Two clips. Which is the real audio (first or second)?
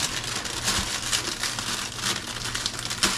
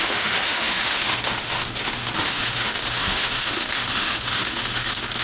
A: first